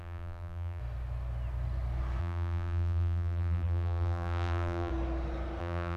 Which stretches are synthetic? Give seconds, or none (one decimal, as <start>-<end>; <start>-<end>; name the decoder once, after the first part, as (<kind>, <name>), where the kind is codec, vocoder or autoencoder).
0.0-0.8 (vocoder, BigVGAN v2); 2.2-4.9; 5.6-6.0